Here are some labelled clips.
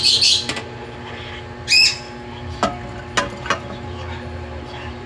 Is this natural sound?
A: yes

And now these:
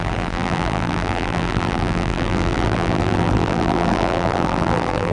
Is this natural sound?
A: no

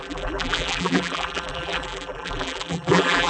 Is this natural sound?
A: no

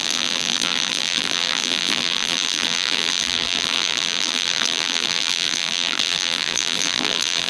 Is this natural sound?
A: no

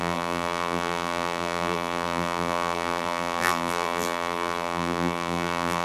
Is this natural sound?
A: no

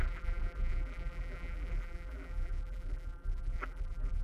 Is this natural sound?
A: no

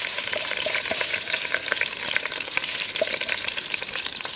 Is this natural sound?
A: no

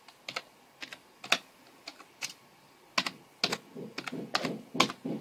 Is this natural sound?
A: yes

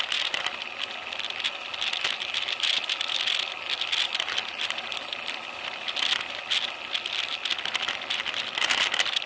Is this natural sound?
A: yes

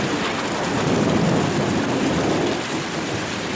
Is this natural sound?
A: yes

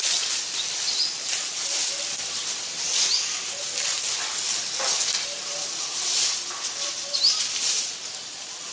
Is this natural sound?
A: yes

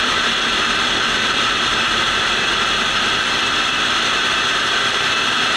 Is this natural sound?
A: no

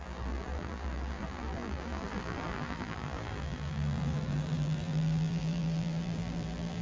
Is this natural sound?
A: no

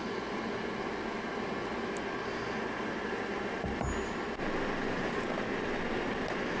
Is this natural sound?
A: yes